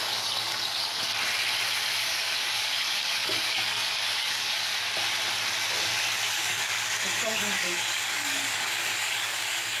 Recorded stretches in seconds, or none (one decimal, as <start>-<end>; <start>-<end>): 1.1-2.0; 4.7-6.3